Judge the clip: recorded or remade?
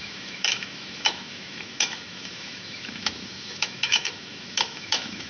remade